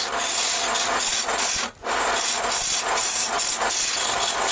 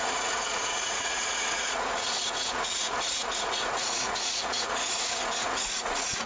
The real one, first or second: first